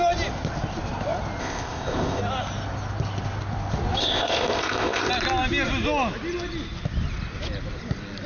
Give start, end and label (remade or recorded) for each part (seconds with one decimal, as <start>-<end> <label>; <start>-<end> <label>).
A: 0.0-1.4 recorded; 1.4-2.2 remade; 2.2-4.0 recorded; 4.0-5.1 remade; 5.1-8.3 recorded